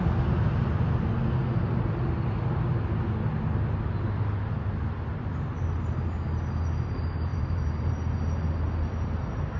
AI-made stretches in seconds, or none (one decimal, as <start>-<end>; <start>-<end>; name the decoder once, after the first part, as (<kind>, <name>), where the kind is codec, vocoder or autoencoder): 7.3-7.9 (vocoder, BigVGAN v2)